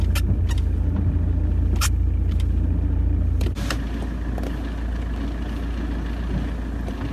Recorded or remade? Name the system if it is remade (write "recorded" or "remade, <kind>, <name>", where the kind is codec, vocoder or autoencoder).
recorded